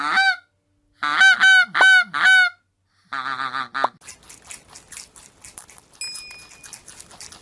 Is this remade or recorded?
recorded